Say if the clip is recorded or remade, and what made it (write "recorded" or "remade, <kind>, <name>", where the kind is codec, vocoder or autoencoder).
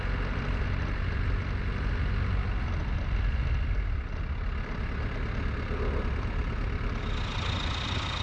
recorded